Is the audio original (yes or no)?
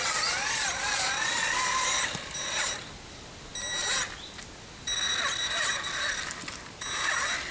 yes